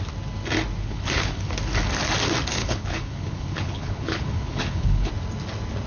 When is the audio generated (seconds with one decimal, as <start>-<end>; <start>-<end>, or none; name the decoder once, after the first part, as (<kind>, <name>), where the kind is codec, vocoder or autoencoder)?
0.8-1.5 (codec, HILCodec); 2.6-5.1